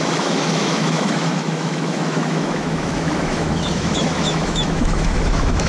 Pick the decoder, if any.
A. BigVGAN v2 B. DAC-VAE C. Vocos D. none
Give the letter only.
B